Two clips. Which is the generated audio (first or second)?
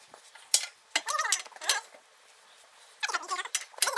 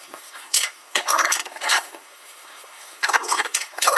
second